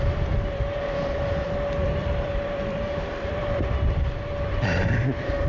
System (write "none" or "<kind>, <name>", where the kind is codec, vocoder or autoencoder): vocoder, BigVGAN v2